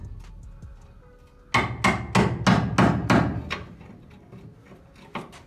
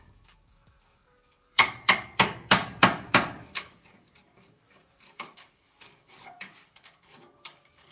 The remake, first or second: second